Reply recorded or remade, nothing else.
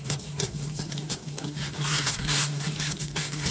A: remade